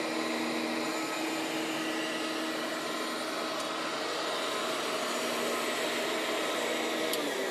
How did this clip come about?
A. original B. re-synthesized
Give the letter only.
A